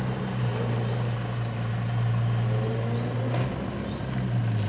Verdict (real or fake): real